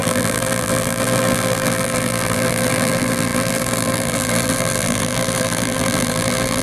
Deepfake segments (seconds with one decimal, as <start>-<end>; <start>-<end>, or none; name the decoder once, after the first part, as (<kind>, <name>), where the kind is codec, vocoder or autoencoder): 0.0-6.6 (vocoder, BigVGAN v2)